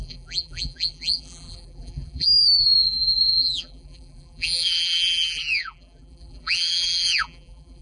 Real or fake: fake